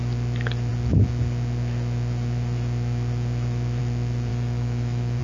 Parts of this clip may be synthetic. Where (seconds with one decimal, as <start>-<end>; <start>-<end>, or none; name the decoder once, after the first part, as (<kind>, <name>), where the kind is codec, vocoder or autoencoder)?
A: 4.3-5.2 (autoencoder, DAC-VAE)